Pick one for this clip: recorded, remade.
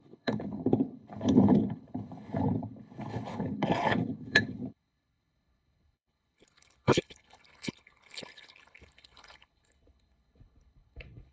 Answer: remade